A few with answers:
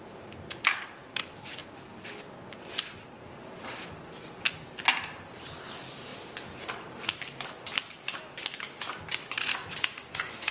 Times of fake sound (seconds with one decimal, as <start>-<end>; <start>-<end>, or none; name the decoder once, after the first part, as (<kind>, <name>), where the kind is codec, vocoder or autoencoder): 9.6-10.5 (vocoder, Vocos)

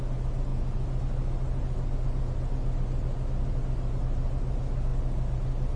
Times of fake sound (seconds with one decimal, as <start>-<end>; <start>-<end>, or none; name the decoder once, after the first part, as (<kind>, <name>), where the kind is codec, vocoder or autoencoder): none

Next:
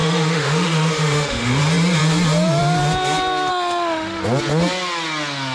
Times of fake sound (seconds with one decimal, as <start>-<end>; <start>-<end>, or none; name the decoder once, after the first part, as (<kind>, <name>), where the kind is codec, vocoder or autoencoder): 0.0-1.6 (autoencoder, DAC-VAE); 3.5-4.2

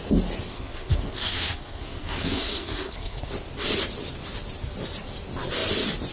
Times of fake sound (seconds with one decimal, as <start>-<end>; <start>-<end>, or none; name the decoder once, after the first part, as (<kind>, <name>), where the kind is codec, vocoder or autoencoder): 0.5-3.3 (codec, SNAC)